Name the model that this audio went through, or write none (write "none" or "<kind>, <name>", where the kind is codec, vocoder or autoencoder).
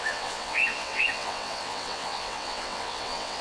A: vocoder, WaveNeXt